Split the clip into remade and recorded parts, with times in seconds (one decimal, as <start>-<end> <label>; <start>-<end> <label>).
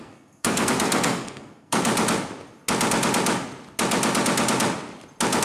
0.0-1.9 remade; 1.9-5.4 recorded